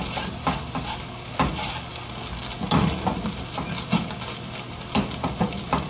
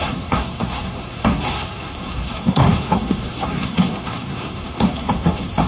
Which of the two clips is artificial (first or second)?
second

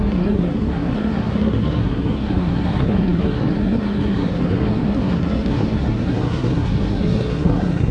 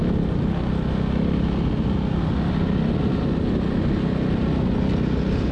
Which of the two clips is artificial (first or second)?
first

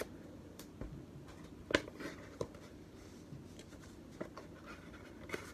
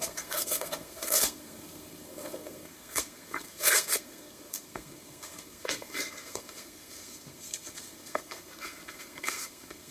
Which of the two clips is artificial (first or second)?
second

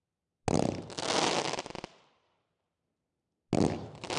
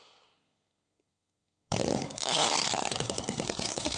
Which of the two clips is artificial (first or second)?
second